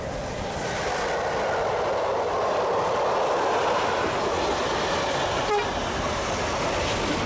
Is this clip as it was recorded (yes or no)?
yes